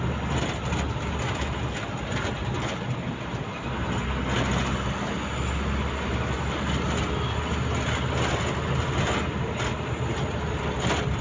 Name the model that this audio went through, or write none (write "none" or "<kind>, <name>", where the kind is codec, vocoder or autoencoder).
none